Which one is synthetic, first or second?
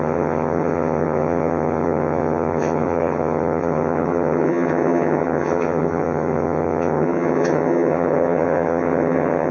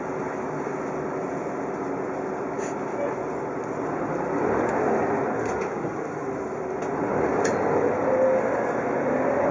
first